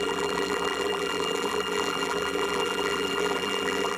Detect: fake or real fake